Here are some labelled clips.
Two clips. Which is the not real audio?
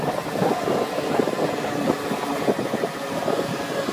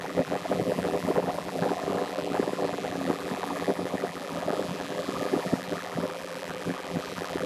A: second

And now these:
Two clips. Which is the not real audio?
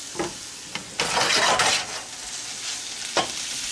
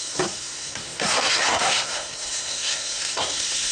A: second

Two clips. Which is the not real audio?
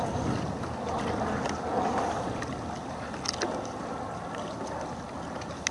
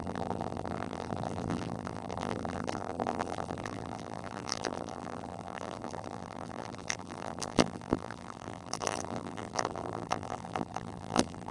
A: second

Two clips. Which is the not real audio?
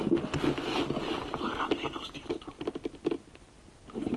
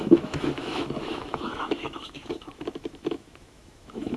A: second